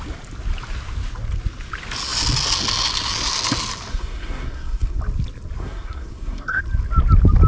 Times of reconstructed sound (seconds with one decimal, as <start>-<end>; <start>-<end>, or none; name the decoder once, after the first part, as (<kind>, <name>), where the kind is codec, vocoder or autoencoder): 3.9-5.0 (codec, SNAC); 5.6-6.6